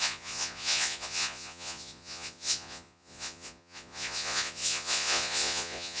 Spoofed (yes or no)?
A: yes